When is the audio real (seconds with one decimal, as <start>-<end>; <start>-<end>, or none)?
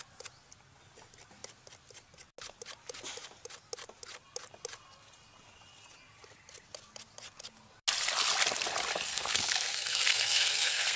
0.0-9.1